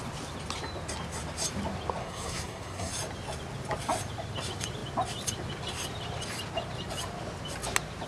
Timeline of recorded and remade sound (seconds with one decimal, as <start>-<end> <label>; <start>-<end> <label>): 0.0-2.0 recorded; 2.0-2.9 remade; 2.9-8.1 recorded